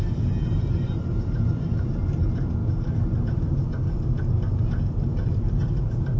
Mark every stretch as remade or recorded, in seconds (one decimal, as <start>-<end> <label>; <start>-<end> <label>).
0.0-1.0 recorded; 1.0-2.2 remade; 2.2-6.2 recorded